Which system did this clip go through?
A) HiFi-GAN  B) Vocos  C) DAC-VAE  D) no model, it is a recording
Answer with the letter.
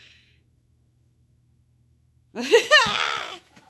C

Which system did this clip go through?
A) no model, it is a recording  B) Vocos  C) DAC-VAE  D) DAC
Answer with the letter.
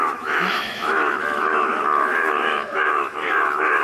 C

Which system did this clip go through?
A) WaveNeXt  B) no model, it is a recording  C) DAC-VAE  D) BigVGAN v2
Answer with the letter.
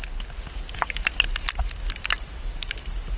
B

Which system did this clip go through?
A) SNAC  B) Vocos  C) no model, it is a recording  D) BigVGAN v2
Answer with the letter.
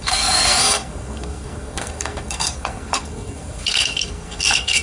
A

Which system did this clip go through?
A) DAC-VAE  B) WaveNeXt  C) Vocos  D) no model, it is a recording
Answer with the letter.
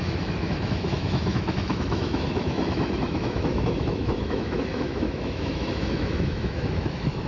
A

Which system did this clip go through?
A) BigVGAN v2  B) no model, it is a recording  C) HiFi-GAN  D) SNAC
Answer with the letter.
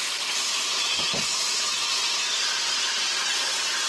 B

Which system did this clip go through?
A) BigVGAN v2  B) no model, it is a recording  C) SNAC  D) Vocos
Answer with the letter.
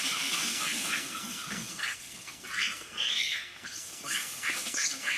C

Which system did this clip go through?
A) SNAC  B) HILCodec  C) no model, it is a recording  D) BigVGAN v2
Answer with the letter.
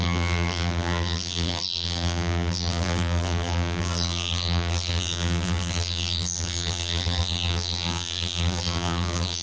D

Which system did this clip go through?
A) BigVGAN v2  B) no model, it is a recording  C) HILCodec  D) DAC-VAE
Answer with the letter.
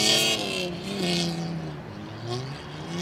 B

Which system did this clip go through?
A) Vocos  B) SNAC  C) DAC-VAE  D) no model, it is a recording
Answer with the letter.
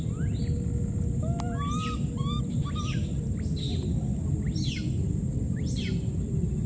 D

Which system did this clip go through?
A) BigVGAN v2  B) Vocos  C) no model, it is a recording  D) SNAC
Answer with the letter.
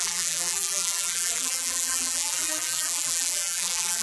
A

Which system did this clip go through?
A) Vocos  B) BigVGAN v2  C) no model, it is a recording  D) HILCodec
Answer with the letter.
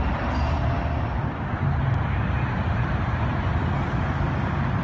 C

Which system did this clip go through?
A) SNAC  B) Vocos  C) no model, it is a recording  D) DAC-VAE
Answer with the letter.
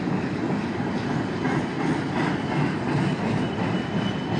C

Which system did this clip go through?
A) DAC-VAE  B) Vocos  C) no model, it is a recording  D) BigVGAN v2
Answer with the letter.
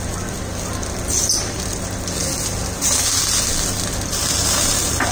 C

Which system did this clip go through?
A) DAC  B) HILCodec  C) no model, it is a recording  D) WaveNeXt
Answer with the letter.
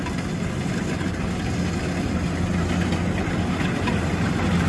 C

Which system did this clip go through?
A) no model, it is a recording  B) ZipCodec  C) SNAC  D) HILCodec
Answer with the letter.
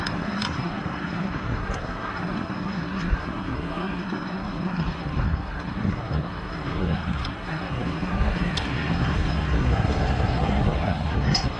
C